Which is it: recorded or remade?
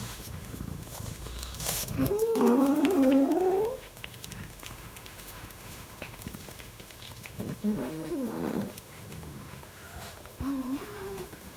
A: remade